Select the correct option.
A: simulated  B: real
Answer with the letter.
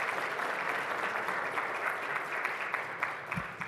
B